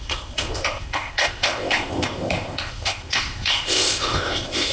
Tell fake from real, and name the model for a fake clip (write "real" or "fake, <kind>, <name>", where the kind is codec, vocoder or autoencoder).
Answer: fake, codec, ZipCodec